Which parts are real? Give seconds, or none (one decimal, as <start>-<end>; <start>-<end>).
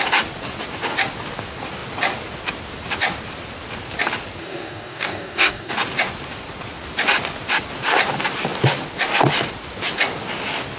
0.0-4.4; 5.7-10.8